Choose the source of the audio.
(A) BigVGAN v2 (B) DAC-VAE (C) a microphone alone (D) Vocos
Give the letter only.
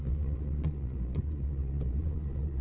D